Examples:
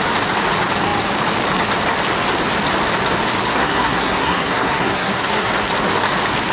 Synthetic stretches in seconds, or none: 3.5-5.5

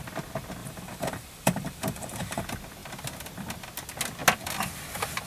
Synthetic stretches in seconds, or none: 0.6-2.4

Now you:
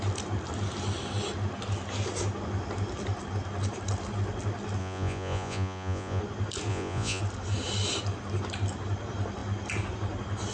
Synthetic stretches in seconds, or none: 4.8-6.2; 6.7-7.2

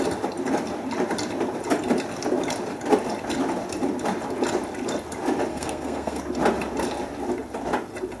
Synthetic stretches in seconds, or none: 5.5-6.2

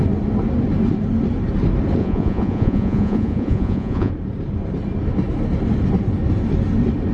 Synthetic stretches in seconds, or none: 2.0-4.1

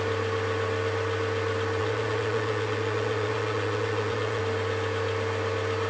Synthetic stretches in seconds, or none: 1.8-4.4

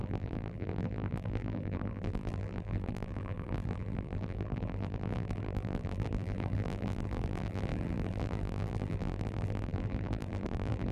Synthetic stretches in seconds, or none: 0.0-10.9

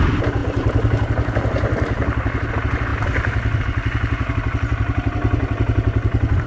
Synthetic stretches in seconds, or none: none